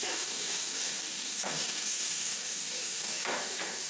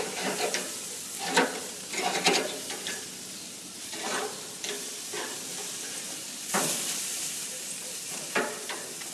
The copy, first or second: first